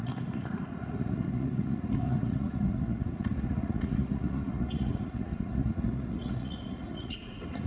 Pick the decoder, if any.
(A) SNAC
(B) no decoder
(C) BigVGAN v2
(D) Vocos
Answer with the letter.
D